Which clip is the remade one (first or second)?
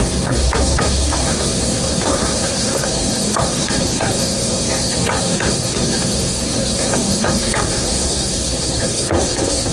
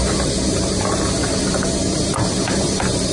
first